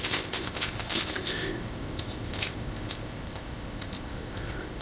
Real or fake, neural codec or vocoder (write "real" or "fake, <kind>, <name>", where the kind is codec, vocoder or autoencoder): fake, codec, ZipCodec